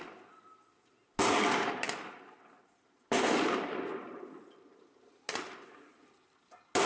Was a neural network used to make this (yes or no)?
no